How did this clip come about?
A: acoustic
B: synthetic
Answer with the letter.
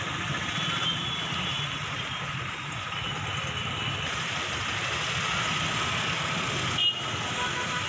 A